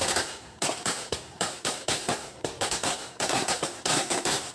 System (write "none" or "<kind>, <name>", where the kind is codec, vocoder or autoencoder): codec, SNAC